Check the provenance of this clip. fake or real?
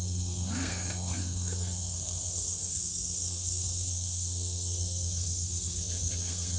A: fake